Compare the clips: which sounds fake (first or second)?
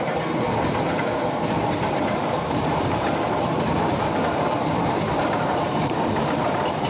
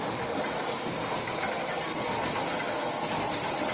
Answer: first